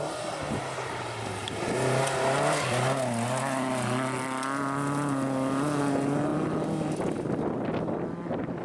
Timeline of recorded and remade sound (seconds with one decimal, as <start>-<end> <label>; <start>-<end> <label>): 0.0-8.6 recorded